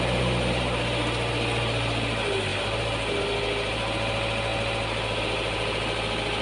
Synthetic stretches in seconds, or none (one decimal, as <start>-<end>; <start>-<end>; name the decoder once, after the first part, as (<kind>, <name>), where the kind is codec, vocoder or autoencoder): none